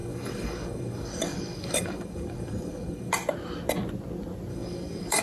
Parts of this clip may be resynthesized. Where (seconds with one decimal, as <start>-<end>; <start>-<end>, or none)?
0.0-3.1; 4.5-5.2